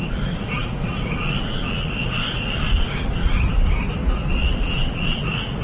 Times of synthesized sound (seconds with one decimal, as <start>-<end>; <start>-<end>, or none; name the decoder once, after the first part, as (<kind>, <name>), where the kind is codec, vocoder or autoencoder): 0.0-5.6 (vocoder, Vocos)